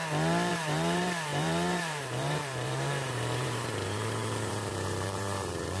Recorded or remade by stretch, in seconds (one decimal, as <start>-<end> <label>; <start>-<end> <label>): 0.0-0.5 recorded; 0.5-5.8 remade